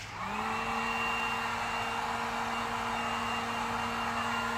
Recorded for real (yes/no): yes